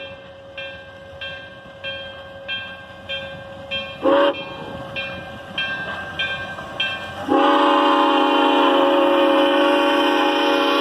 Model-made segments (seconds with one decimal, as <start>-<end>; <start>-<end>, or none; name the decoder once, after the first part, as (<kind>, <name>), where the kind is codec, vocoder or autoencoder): none